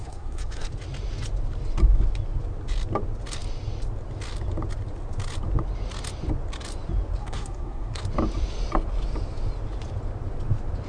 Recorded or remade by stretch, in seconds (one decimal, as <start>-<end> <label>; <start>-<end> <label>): 0.0-0.7 remade; 0.7-7.2 recorded; 7.2-8.0 remade; 8.0-10.9 recorded